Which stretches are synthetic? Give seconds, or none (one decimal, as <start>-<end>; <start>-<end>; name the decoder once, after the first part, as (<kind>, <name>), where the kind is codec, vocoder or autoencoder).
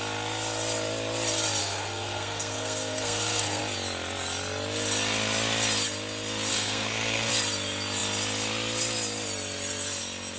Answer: 1.6-3.6 (codec, SNAC); 6.5-7.3